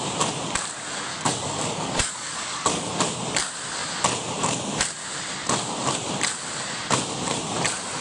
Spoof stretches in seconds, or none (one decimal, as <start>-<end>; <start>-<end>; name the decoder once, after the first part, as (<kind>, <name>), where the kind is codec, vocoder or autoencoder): 1.1-2.9 (codec, DAC)